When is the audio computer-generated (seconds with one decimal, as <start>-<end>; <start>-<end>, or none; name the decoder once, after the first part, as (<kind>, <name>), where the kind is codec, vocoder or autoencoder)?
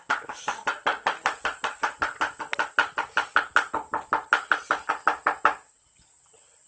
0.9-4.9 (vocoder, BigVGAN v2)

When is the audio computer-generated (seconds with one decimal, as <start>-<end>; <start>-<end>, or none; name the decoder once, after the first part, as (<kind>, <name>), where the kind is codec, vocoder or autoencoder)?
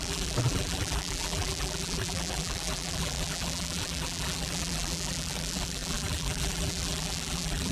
0.0-7.7 (vocoder, BigVGAN v2)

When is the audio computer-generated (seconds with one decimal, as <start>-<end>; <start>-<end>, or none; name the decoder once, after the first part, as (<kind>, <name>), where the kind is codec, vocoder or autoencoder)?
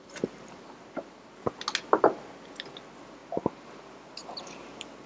none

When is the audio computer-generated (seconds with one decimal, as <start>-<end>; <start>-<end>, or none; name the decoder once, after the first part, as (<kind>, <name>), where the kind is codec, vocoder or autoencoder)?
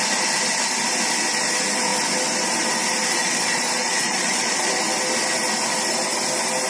3.2-4.8 (vocoder, Vocos)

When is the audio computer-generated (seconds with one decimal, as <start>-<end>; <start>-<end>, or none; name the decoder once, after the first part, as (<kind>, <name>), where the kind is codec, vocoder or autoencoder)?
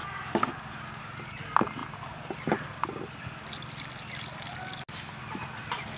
none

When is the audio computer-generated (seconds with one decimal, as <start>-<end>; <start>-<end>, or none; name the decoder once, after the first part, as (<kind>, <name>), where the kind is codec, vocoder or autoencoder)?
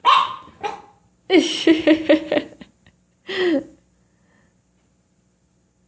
none